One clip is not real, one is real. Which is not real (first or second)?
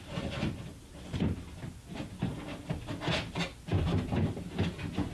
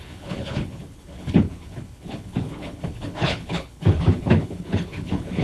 second